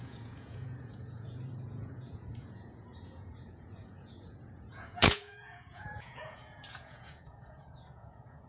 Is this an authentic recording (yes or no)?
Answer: no